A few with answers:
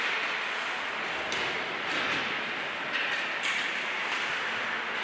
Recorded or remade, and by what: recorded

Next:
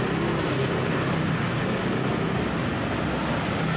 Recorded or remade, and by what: recorded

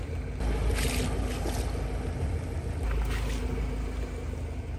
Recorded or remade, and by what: recorded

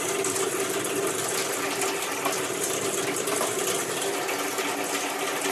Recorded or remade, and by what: recorded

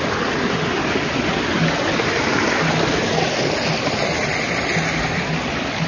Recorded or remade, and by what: recorded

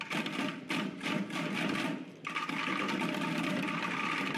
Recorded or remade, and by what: recorded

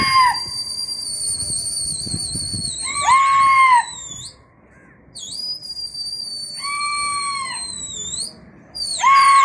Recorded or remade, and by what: recorded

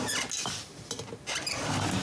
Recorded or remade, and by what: recorded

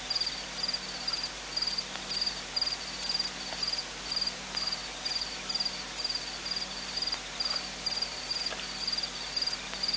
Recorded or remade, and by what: recorded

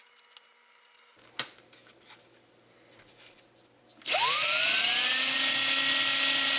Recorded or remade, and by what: recorded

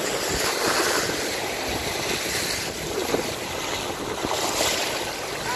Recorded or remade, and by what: recorded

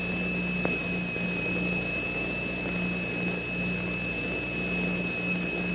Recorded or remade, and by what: recorded